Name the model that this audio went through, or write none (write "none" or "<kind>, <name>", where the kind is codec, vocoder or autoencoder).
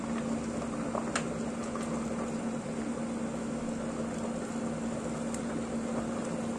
none